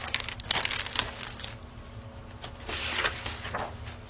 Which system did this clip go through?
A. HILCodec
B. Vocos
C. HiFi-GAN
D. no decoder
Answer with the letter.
D